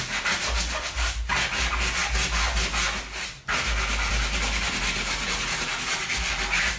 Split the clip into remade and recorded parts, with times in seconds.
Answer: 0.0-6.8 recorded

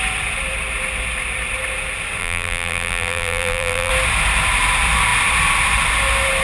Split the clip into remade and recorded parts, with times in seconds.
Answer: 0.0-2.2 recorded; 2.2-3.9 remade; 3.9-6.4 recorded

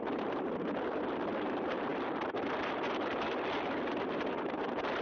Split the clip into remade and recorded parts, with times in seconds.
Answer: 0.0-1.9 remade; 1.9-4.0 recorded; 4.0-5.0 remade

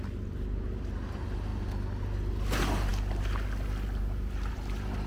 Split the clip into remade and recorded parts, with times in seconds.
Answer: 0.0-5.1 recorded

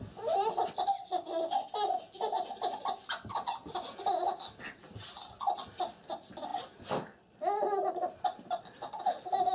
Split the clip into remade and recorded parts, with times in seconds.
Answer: 0.0-9.5 recorded